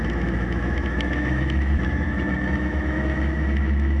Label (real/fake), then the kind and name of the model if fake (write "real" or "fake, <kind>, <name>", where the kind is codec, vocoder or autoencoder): fake, autoencoder, DAC-VAE